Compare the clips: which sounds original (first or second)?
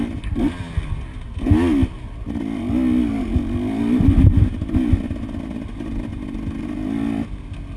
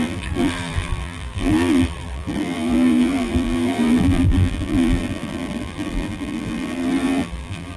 first